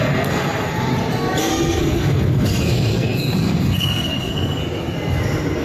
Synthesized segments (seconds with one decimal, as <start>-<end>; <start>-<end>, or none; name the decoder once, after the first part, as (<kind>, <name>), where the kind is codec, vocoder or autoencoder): 0.0-0.9 (codec, SNAC); 1.4-4.6